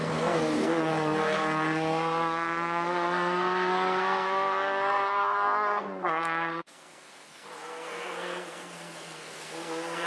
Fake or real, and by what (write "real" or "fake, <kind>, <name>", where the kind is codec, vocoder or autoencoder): fake, codec, SNAC